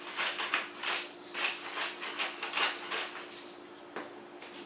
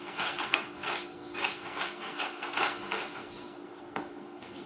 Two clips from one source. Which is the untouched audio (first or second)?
first